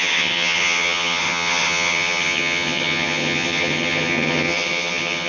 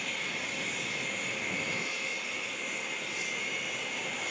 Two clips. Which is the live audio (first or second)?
second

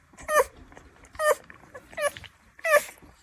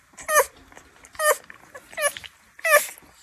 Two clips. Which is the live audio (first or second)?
second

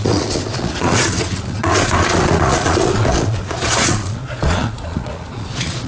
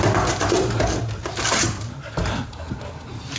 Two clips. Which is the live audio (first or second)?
second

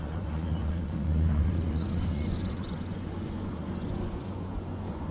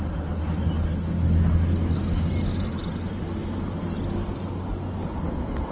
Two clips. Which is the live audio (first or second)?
second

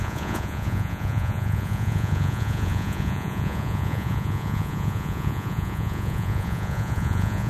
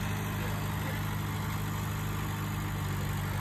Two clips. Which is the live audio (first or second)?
second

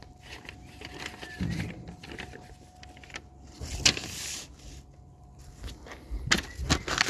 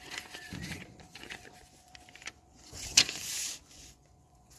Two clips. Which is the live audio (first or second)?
first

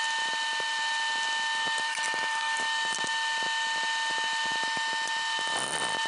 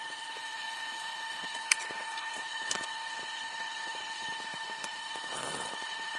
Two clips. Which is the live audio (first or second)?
first